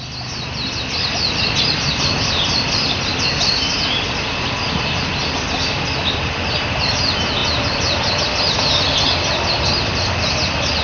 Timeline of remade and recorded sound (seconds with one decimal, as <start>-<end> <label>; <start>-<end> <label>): 0.0-10.8 recorded